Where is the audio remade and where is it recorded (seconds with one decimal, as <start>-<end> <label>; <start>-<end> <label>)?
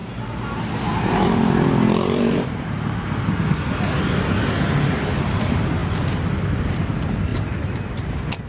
0.0-3.2 remade; 3.2-7.3 recorded; 7.3-8.1 remade; 8.1-8.5 recorded